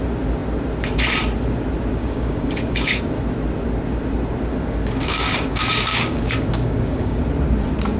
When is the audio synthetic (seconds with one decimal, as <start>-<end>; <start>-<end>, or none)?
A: 2.0-3.0; 4.5-7.2